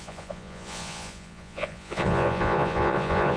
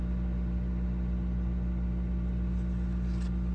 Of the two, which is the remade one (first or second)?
first